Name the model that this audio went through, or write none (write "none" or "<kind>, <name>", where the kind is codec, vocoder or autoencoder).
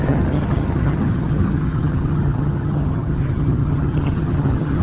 vocoder, HiFi-GAN